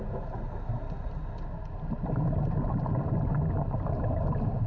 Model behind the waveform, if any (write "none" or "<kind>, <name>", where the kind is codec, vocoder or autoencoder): none